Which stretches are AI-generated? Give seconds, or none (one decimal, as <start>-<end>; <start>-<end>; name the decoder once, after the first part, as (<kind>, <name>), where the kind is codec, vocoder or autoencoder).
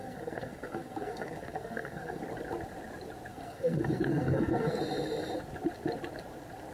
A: 0.0-2.2 (codec, SNAC); 3.3-4.8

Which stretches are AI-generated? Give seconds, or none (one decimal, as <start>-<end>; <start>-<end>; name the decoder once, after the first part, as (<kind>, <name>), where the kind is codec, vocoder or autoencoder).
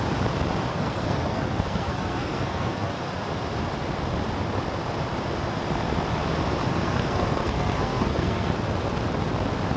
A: 0.7-2.9 (codec, SNAC); 6.7-8.5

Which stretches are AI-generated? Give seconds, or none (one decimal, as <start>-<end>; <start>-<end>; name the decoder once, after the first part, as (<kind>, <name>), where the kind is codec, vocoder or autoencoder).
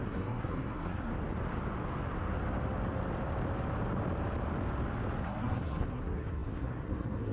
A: 0.0-1.1 (codec, SNAC); 5.2-7.3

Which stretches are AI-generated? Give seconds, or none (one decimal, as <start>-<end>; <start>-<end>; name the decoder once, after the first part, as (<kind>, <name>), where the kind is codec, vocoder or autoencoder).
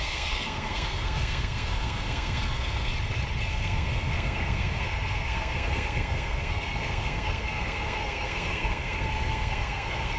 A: 0.0-2.9 (codec, SNAC); 3.5-10.2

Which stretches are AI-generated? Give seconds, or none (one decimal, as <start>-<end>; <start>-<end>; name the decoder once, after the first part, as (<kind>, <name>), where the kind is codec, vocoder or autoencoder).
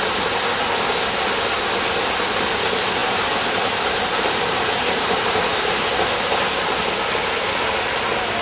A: none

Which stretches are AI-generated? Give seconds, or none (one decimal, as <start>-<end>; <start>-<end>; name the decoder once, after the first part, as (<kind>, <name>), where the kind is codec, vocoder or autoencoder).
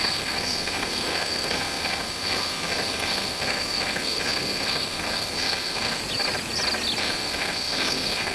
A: 0.0-6.0 (codec, SNAC); 7.0-8.3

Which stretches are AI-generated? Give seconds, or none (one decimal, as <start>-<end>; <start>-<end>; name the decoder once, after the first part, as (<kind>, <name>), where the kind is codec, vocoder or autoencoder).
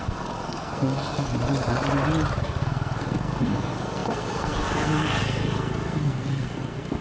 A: 0.0-1.3 (codec, SNAC); 2.4-7.0